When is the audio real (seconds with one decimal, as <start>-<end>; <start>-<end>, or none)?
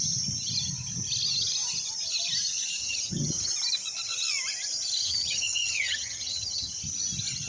0.0-2.8; 3.5-5.0; 6.7-7.5